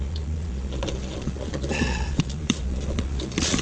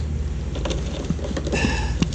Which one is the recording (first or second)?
second